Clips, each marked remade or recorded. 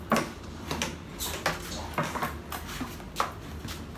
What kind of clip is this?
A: recorded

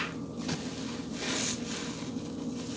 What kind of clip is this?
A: recorded